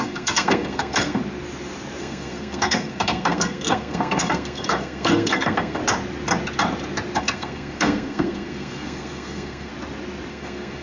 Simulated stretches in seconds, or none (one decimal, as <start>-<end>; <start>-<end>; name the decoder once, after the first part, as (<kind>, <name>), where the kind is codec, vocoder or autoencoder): 0.0-1.2 (codec, SNAC); 2.0-5.8; 7.2-9.7; 10.3-10.8